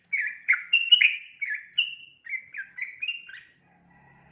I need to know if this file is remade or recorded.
recorded